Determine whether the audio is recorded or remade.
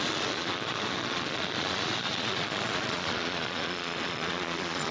remade